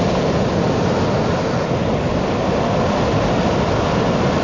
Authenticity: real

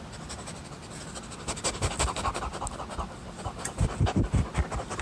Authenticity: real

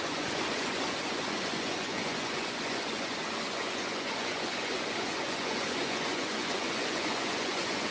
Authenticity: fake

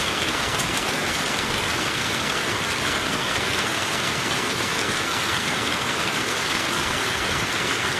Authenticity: fake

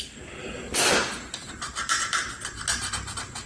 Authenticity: real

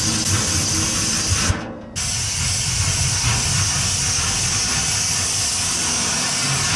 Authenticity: real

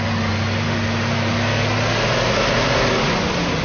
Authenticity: real